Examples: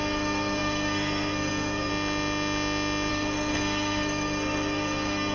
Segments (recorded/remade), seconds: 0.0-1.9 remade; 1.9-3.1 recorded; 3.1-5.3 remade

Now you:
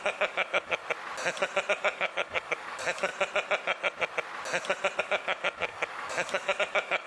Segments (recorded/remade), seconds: 0.0-0.8 remade; 0.8-1.7 recorded; 1.7-3.1 remade; 3.1-5.0 recorded; 5.0-7.1 remade

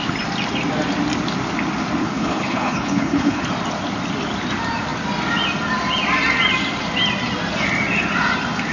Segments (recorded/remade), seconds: 0.0-2.0 recorded; 2.0-3.4 remade; 3.4-8.7 recorded

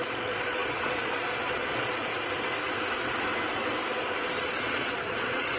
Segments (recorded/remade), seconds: 0.0-2.1 remade; 2.1-4.4 recorded; 4.4-5.6 remade

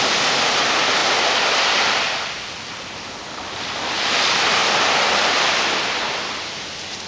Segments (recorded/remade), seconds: 0.0-7.1 recorded

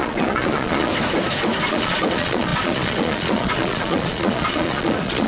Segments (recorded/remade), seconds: 0.0-0.9 remade; 0.9-1.7 recorded; 1.7-5.3 remade

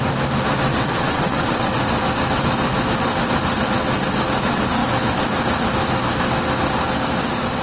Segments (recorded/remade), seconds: 0.0-0.7 recorded; 0.7-1.7 remade; 1.7-7.6 recorded

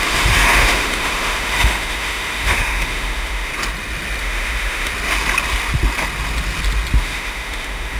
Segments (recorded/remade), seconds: 0.0-3.5 remade; 3.5-4.2 recorded; 4.2-4.9 remade; 4.9-7.0 recorded; 7.0-8.0 remade